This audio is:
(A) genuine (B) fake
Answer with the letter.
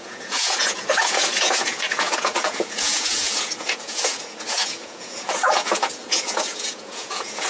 B